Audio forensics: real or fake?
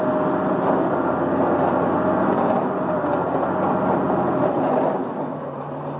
real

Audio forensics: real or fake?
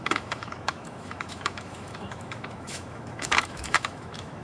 fake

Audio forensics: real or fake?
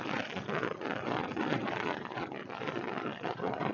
fake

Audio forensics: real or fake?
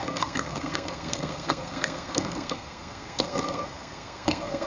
fake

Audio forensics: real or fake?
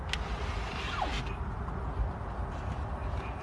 real